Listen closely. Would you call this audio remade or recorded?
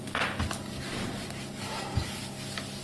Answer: recorded